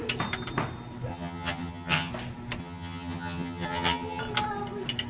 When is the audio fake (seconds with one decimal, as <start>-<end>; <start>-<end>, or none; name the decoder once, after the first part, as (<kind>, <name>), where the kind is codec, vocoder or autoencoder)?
1.1-2.1 (vocoder, HiFi-GAN); 2.6-4.2